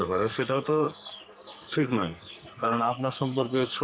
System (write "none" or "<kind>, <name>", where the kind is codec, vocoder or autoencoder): codec, SNAC